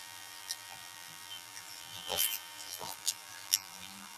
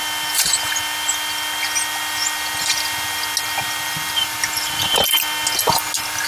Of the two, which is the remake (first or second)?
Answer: first